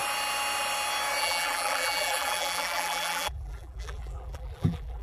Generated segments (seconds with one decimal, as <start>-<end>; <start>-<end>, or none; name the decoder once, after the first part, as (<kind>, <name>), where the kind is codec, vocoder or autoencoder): 1.2-5.0 (vocoder, BigVGAN v2)